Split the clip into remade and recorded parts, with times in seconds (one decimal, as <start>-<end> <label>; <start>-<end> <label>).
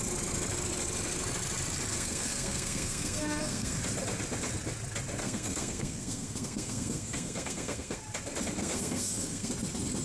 0.0-1.9 recorded; 1.9-3.8 remade; 3.8-5.2 recorded; 5.2-8.0 remade; 8.0-8.6 recorded; 8.6-9.5 remade; 9.5-10.0 recorded